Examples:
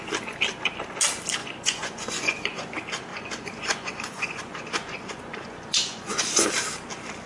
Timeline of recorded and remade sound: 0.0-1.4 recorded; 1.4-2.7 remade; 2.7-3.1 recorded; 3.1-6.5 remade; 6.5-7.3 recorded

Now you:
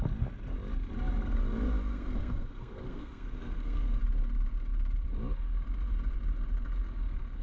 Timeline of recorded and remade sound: 0.0-1.9 recorded; 1.9-4.0 remade; 4.0-7.4 recorded

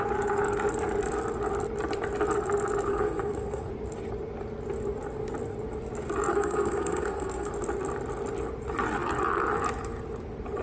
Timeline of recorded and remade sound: 0.0-2.9 recorded; 2.9-3.7 remade; 3.7-6.3 recorded; 6.3-7.5 remade; 7.5-10.6 recorded

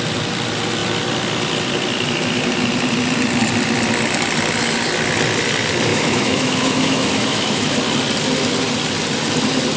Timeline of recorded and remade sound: 0.0-5.9 recorded; 5.9-7.7 remade; 7.7-9.8 recorded

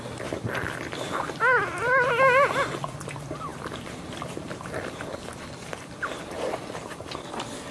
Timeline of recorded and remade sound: 0.0-7.7 recorded

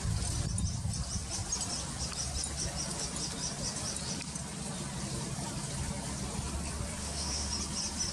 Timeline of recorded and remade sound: 0.0-7.0 recorded; 7.0-7.5 remade; 7.5-8.1 recorded

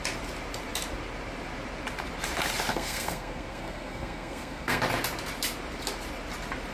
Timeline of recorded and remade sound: 0.0-2.7 recorded; 2.7-4.8 remade; 4.8-6.7 recorded